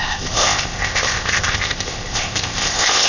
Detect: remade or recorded remade